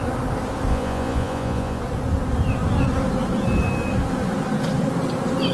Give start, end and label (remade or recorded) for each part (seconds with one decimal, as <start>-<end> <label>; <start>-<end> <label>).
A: 0.0-0.7 recorded; 0.7-1.8 remade; 1.8-5.5 recorded

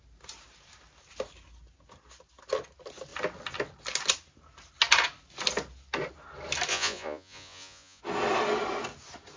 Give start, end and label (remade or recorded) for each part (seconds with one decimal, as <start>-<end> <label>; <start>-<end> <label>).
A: 0.0-6.7 recorded; 6.7-8.0 remade; 8.0-9.4 recorded